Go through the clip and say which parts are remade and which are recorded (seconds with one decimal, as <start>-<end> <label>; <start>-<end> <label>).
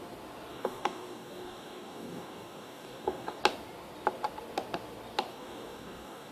0.0-0.5 recorded; 0.5-3.4 remade; 3.4-5.3 recorded; 5.3-6.3 remade